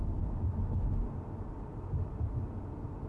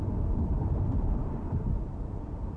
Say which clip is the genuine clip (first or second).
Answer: first